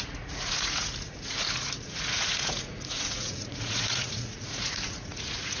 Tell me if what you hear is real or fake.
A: fake